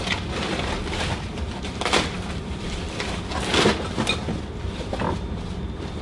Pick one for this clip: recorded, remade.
recorded